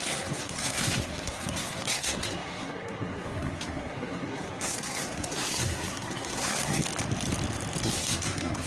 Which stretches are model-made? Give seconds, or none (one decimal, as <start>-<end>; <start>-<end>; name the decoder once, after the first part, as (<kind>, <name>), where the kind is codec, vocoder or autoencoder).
0.0-6.8 (codec, SNAC); 7.8-8.7